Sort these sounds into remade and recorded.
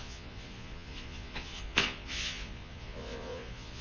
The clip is remade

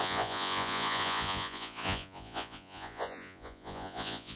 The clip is remade